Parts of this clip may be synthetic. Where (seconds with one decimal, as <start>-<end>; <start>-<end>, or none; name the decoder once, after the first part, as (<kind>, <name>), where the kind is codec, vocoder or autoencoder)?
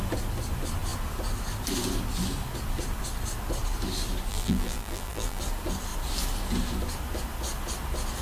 4.3-5.4 (vocoder, BigVGAN v2)